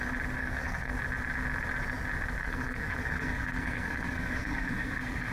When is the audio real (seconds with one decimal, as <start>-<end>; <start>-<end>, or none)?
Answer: 0.0-0.4; 1.0-2.4